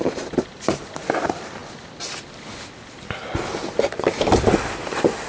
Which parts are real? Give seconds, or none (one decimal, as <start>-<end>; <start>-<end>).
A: 0.0-5.3